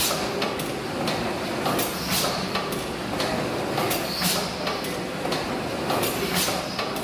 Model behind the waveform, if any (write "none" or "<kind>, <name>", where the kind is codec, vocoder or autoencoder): none